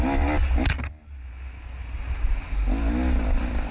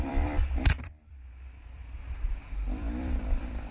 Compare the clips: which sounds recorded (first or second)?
first